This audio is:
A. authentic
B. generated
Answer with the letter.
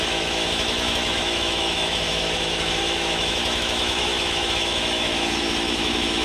B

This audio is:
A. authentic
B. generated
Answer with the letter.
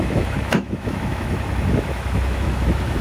B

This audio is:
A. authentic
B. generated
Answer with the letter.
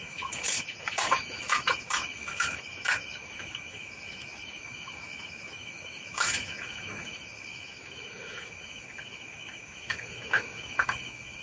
B